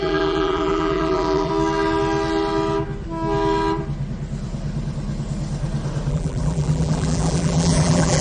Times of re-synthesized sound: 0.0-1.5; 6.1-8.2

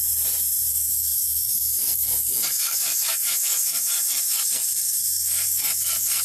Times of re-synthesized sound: 0.7-6.2

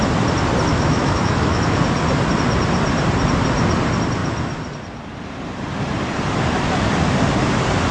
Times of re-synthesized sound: 0.7-1.8

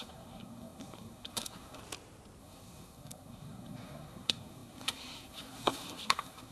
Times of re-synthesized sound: 0.0-1.8; 2.4-6.5